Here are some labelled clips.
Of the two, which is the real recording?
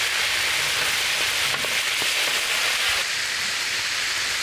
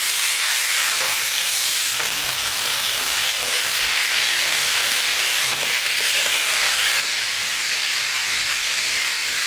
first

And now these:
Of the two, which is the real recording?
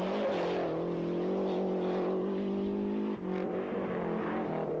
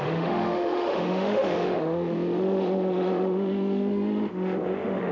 first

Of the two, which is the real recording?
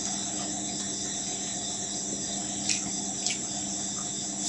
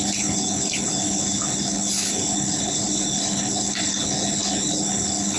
first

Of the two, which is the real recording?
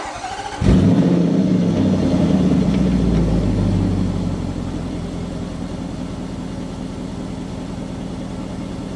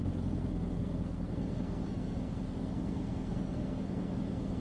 first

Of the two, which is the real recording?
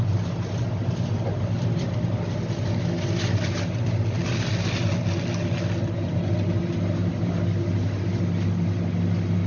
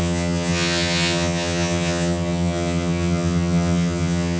first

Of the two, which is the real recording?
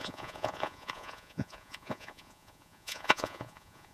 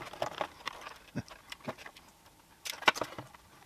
second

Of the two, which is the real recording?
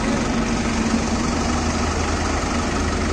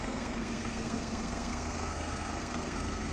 first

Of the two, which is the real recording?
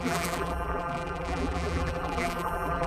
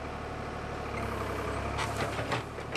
second